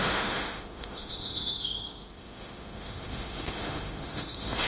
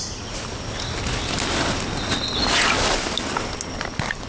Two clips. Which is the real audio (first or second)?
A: second